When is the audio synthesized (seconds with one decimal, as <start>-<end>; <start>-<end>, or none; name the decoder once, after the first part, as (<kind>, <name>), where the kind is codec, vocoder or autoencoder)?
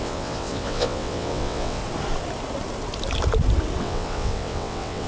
0.0-1.8 (vocoder, WaveNeXt); 3.8-5.1